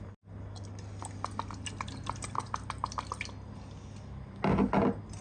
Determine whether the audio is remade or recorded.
recorded